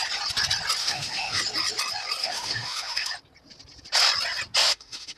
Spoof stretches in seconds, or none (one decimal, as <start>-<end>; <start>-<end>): 0.8-1.4; 2.2-3.1; 4.6-5.2